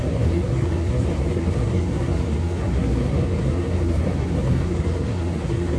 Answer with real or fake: fake